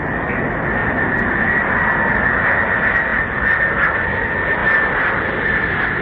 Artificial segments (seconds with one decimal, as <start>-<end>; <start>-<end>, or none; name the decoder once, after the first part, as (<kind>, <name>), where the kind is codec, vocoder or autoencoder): 0.8-2.0 (vocoder, BigVGAN v2); 3.1-3.6; 4.6-5.1

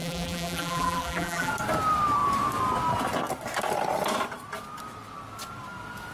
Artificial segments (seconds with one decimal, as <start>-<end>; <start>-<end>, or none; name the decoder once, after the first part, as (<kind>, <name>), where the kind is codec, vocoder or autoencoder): 0.0-1.5 (vocoder, BigVGAN v2)

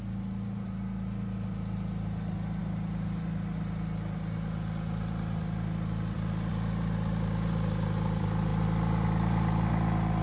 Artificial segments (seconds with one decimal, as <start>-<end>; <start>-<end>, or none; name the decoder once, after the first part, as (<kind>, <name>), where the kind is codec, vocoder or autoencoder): none

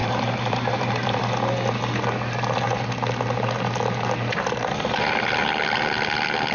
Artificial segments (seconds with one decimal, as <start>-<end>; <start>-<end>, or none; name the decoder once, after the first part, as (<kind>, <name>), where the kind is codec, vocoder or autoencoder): 0.0-1.2 (vocoder, BigVGAN v2)